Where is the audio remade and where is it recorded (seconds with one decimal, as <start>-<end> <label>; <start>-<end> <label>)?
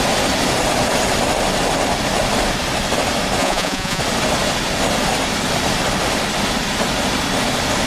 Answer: 0.0-3.4 recorded; 3.4-4.0 remade; 4.0-7.9 recorded